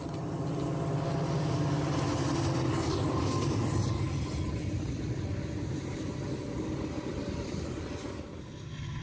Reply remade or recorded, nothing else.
recorded